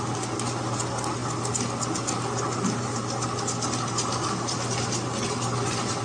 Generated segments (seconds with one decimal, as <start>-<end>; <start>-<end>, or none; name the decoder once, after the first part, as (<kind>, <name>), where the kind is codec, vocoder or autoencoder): none